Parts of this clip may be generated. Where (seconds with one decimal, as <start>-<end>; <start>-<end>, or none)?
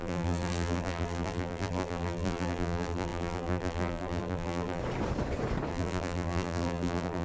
0.0-4.8; 5.7-7.2